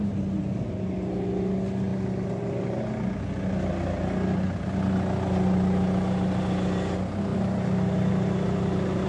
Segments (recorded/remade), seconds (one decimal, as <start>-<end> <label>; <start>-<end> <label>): 0.0-9.1 recorded